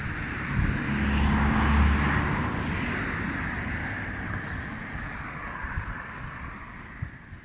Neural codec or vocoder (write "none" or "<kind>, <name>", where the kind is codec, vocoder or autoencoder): none